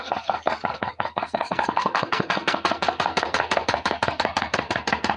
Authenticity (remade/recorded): remade